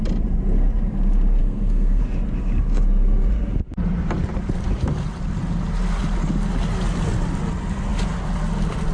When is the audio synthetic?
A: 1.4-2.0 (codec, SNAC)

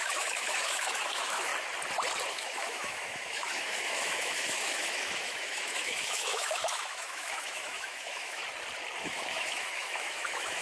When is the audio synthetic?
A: 0.0-1.5 (autoencoder, DAC-VAE); 2.3-8.4; 9.0-10.6

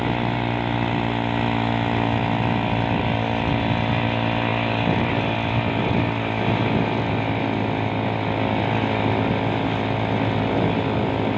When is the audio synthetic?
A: none

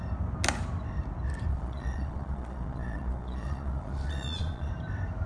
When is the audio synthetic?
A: 1.5-4.7 (vocoder, Vocos)